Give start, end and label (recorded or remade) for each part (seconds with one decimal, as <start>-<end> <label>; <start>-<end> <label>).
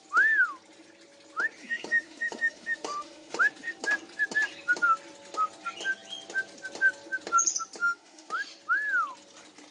0.0-1.6 recorded; 1.6-3.5 remade; 3.5-7.8 recorded; 7.8-8.3 remade; 8.3-9.7 recorded